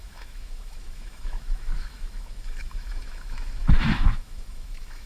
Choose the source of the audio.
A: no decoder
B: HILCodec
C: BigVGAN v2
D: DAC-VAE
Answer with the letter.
D